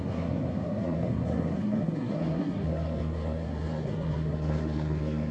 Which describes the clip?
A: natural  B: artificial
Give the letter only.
B